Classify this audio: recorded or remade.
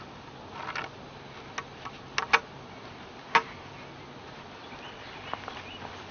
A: recorded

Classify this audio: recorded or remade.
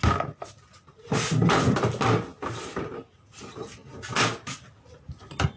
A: recorded